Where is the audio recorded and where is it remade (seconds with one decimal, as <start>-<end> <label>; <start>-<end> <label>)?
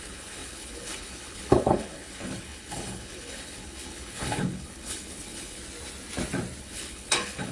0.0-5.6 remade; 5.6-6.6 recorded; 6.6-7.5 remade